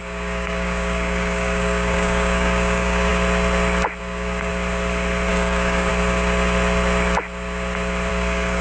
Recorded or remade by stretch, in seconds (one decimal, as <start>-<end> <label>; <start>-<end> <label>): 0.0-3.1 remade; 3.1-4.0 recorded; 4.0-4.5 remade; 4.5-5.3 recorded; 5.3-5.9 remade; 5.9-8.1 recorded; 8.1-8.6 remade